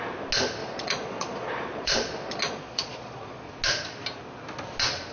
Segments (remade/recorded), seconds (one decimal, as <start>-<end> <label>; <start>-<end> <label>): 0.0-0.6 recorded; 0.6-3.5 remade; 3.5-5.1 recorded